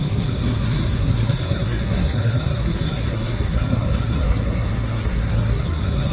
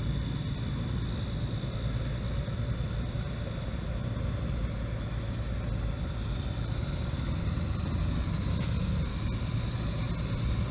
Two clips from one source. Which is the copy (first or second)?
first